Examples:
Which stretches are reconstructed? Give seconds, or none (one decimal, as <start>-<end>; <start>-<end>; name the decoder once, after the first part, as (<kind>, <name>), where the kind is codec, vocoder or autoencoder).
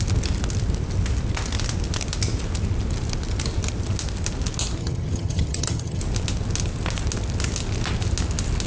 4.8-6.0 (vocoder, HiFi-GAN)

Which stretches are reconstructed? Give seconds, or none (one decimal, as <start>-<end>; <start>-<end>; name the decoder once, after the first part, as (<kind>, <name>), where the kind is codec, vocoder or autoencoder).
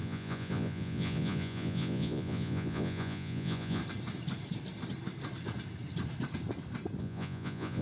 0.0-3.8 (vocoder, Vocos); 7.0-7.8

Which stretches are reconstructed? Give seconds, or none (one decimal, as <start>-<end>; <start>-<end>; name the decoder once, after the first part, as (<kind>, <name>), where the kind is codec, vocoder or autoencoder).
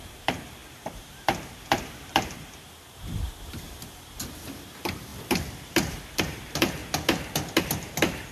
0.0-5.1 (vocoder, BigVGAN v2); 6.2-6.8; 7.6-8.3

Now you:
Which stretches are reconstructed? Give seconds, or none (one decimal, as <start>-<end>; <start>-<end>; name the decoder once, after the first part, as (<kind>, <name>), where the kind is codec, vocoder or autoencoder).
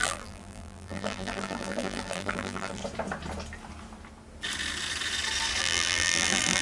0.0-2.8 (vocoder, BigVGAN v2); 5.6-6.6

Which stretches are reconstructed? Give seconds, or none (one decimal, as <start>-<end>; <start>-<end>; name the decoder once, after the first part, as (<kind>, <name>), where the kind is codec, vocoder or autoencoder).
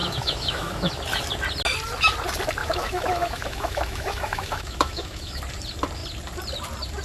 0.0-0.9 (autoencoder, DAC-VAE); 2.6-5.4